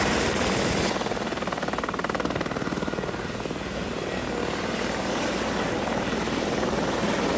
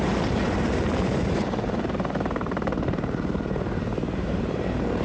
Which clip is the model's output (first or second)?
second